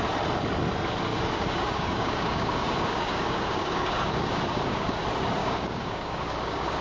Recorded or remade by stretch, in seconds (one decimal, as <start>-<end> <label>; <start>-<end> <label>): 0.0-1.1 recorded; 1.1-5.0 remade; 5.0-5.4 recorded; 5.4-6.8 remade